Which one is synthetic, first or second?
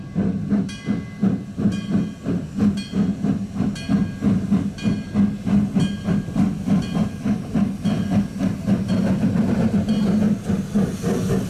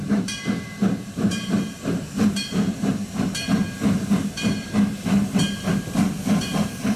second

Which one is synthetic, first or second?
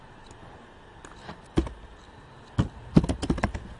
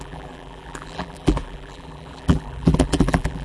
second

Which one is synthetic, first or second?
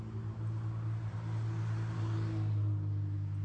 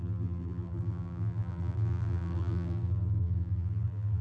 second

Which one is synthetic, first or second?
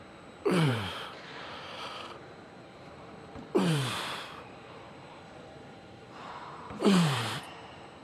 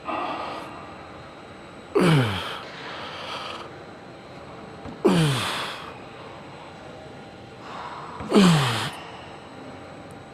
first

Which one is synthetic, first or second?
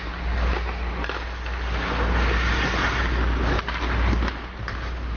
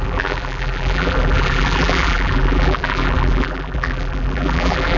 second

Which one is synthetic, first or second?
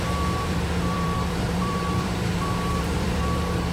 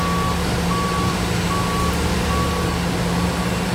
first